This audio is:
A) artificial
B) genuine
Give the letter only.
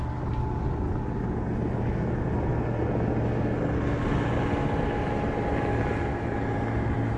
B